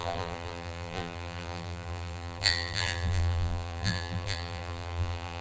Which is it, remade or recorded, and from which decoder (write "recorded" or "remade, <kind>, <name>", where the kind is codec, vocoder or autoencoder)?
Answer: remade, vocoder, BigVGAN v2